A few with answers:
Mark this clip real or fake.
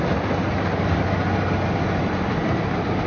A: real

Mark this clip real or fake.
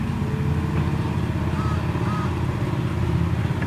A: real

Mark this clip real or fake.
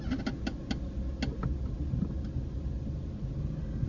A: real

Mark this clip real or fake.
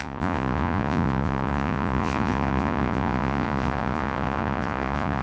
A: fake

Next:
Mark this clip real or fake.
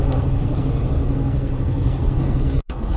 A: fake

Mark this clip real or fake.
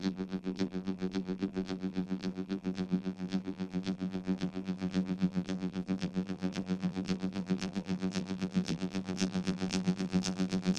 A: fake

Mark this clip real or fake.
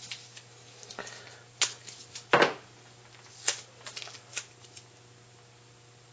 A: real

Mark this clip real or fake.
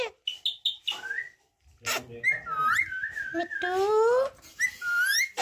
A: real